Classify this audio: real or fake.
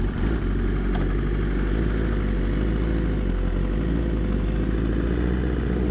real